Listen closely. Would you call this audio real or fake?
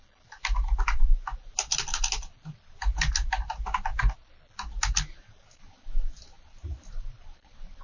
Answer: real